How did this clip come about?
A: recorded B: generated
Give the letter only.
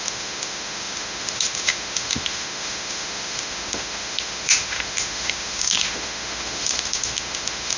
B